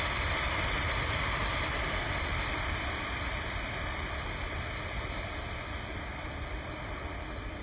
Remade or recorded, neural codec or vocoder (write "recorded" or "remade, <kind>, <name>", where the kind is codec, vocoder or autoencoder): remade, vocoder, BigVGAN v2